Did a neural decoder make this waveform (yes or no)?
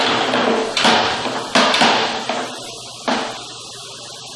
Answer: no